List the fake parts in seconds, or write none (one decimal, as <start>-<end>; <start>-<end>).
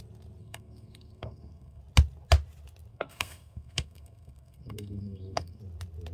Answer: 0.4-1.8; 2.9-5.6